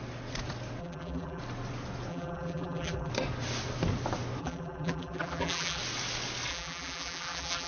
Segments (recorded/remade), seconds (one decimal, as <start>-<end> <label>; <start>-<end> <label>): 0.0-0.8 recorded; 0.8-1.4 remade; 1.4-2.1 recorded; 2.1-3.1 remade; 3.1-4.4 recorded; 4.4-5.8 remade; 5.8-6.5 recorded; 6.5-7.7 remade

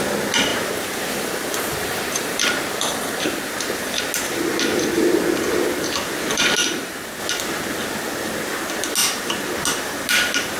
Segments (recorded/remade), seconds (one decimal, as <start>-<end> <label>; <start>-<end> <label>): 0.0-0.5 recorded; 0.5-4.0 remade; 4.0-6.6 recorded; 6.6-7.2 remade; 7.2-10.6 recorded

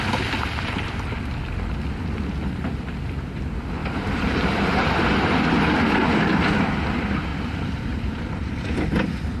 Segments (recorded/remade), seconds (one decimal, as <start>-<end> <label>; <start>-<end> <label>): 0.0-3.8 recorded; 3.8-5.4 remade; 5.4-7.3 recorded; 7.3-8.6 remade; 8.6-9.4 recorded

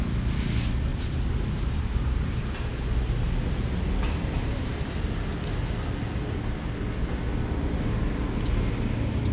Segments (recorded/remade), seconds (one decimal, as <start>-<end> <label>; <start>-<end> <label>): 0.0-0.9 recorded; 0.9-2.4 remade; 2.4-4.4 recorded; 4.4-5.1 remade; 5.1-9.3 recorded